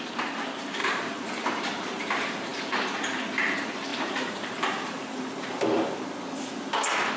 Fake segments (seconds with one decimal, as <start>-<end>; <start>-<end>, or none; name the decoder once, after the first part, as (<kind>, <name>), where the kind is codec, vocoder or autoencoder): 0.8-1.6 (vocoder, BigVGAN v2); 3.9-5.6